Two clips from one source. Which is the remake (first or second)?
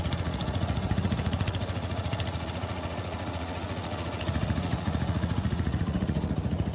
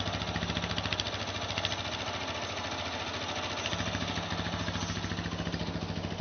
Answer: first